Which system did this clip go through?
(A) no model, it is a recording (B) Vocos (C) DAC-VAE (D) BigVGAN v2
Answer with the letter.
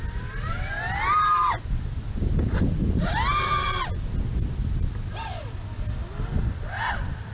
A